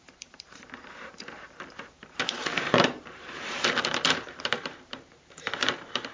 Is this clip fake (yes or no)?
yes